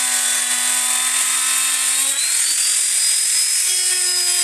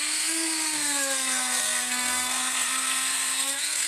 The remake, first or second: second